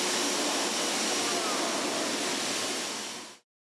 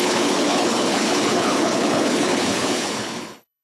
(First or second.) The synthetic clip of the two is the second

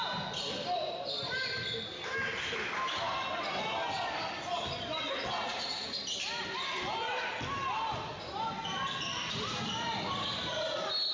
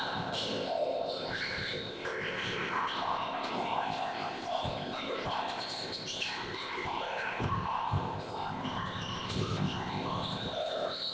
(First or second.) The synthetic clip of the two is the second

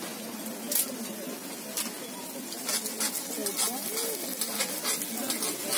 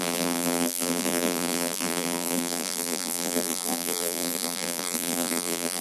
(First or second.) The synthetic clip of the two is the second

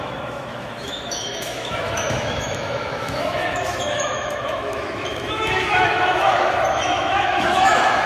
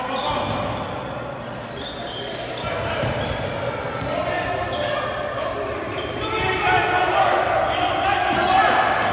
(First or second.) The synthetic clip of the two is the first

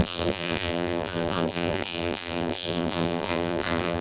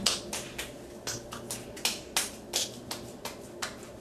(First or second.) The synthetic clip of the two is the first